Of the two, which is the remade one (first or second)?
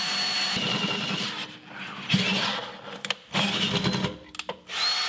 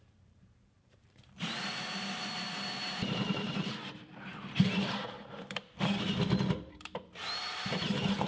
second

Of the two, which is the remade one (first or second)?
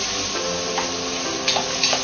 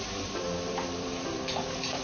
second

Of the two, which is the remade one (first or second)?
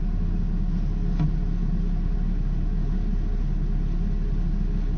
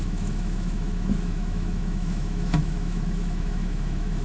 second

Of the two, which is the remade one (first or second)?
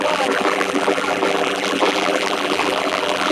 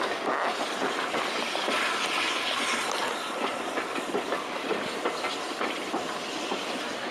first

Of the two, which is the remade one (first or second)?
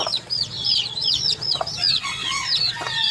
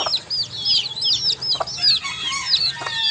first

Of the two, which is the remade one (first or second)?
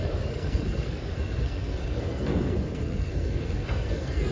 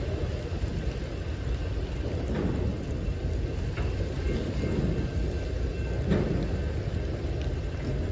first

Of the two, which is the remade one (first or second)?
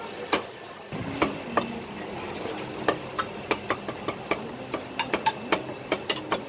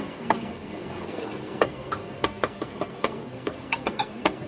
second